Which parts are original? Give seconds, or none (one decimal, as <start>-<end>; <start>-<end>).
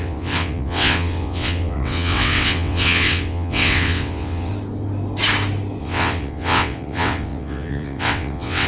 4.5-5.8